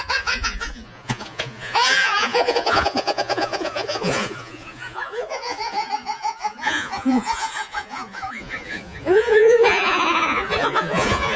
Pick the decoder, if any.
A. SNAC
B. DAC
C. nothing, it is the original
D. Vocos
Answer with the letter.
D